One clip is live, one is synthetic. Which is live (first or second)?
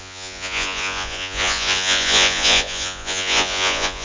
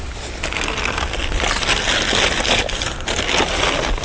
second